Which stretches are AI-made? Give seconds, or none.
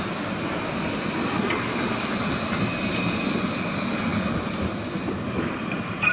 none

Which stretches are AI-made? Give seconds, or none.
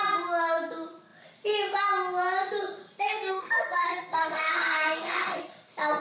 2.8-5.4